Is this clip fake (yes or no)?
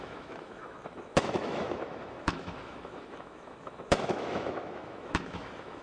yes